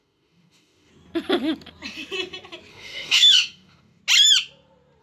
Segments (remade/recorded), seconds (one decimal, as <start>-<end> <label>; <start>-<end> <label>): 0.0-0.9 remade; 0.9-2.7 recorded; 2.7-4.0 remade; 4.0-5.0 recorded